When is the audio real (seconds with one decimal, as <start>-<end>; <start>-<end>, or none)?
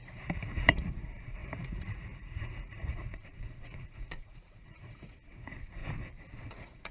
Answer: 5.8-6.5